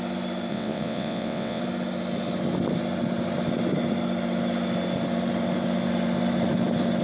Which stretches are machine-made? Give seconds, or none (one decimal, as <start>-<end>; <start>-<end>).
0.5-1.6